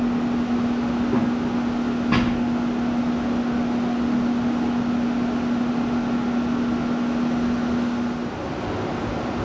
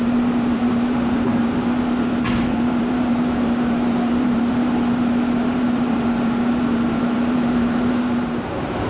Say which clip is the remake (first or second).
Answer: second